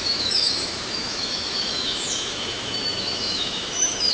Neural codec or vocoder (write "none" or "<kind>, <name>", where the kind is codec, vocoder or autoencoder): autoencoder, DAC-VAE